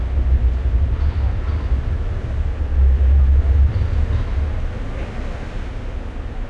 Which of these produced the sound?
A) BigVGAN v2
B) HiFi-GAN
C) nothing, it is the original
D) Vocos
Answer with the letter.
C